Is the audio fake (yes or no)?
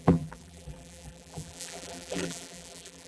yes